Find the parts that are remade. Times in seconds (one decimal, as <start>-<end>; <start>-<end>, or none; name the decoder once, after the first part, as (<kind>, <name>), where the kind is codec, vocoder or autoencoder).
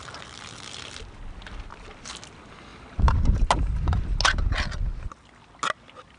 none